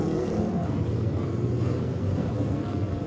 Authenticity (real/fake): fake